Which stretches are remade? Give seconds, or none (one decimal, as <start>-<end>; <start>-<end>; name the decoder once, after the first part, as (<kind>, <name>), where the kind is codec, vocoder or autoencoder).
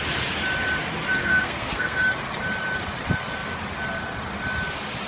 1.2-2.0 (codec, SNAC)